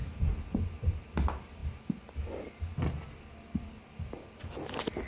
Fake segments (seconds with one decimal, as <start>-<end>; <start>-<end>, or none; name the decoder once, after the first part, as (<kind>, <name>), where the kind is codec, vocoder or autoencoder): none